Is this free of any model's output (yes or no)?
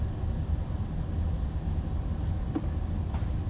yes